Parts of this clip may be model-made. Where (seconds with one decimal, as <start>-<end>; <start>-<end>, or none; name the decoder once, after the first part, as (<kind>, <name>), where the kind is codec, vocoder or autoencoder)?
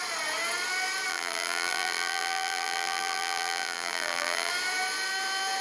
1.1-4.5 (vocoder, BigVGAN v2)